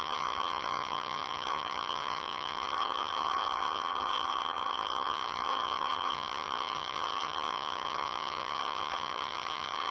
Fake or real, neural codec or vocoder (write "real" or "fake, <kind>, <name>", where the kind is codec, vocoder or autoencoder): fake, vocoder, HiFi-GAN